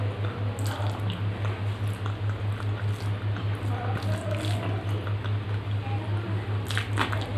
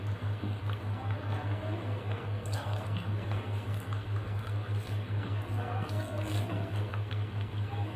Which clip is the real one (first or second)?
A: first